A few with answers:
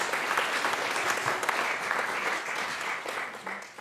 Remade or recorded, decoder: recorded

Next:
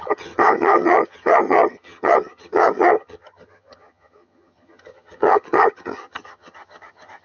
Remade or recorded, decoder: remade, vocoder, HiFi-GAN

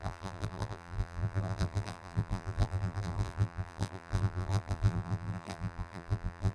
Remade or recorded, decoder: remade, vocoder, BigVGAN v2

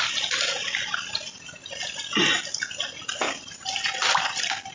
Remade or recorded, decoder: recorded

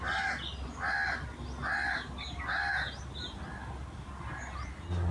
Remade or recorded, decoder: recorded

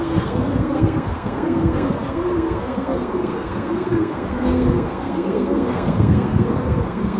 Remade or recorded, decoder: remade, codec, SNAC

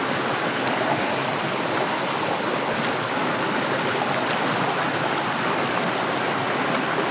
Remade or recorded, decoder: recorded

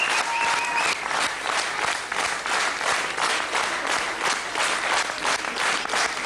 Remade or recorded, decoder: recorded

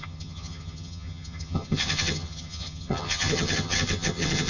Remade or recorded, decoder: remade, vocoder, HiFi-GAN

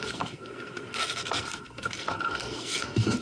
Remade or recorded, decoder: remade, codec, SNAC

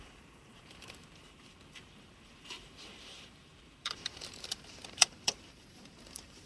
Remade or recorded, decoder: remade, vocoder, BigVGAN v2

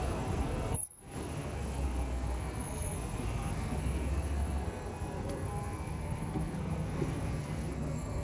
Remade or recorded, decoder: remade, codec, SNAC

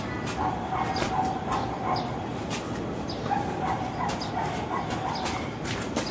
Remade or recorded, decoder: recorded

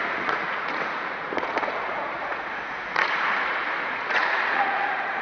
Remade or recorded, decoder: remade, vocoder, Vocos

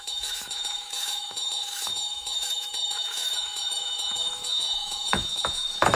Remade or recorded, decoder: remade, autoencoder, DAC-VAE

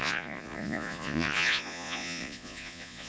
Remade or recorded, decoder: remade, vocoder, Vocos